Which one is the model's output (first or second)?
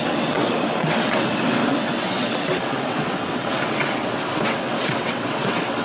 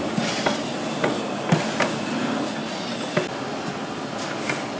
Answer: first